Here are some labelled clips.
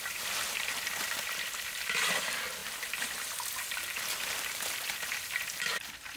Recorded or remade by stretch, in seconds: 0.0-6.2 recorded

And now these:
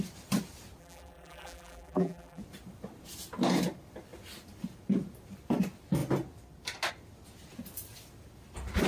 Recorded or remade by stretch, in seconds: 0.0-0.8 recorded; 0.8-2.4 remade; 2.4-8.9 recorded

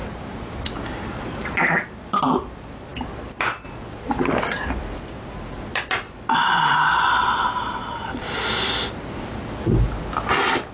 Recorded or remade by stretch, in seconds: 0.0-2.2 remade; 2.2-10.7 recorded

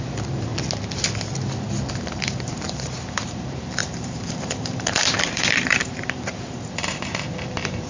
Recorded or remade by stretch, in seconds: 0.0-0.5 remade; 0.5-1.9 recorded; 1.9-7.9 remade